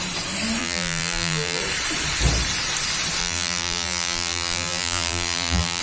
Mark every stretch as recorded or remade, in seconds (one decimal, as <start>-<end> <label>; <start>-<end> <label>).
0.0-0.6 recorded; 0.6-1.6 remade; 1.6-3.2 recorded; 3.2-5.8 remade